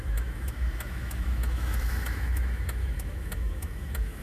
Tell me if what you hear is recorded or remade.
remade